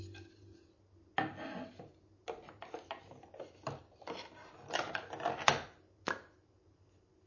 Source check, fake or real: real